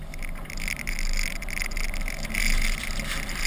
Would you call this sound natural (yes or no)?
yes